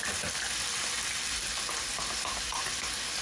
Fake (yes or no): no